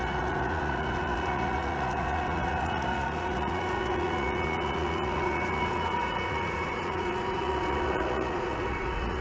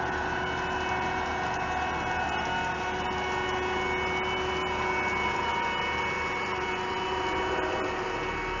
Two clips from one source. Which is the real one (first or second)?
second